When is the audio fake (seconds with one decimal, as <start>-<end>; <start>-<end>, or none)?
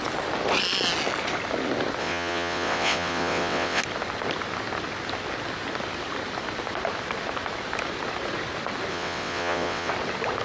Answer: 2.0-3.8; 8.9-9.9